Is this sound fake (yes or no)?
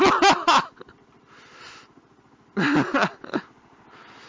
no